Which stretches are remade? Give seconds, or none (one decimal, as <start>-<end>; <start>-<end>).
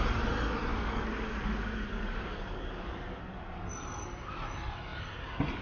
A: 0.7-3.2